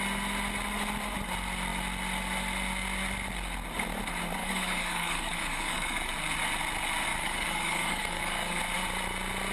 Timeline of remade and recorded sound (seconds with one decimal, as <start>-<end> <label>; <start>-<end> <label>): 0.0-4.4 recorded; 4.4-6.1 remade; 6.1-7.1 recorded; 7.1-8.6 remade; 8.6-9.5 recorded